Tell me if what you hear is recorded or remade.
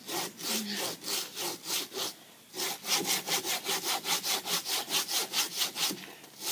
recorded